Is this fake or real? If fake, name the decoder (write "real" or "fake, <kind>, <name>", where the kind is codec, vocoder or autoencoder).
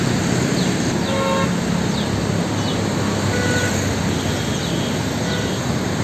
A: real